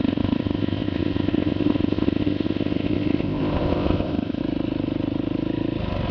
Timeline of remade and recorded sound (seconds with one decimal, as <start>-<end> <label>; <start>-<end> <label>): 0.0-4.4 remade; 4.4-6.1 recorded